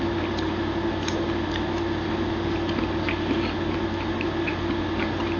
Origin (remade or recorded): recorded